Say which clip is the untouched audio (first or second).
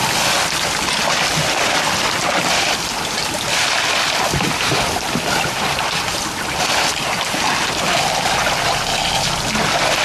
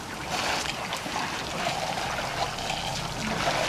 second